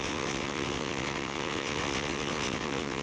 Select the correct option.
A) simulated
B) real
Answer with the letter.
A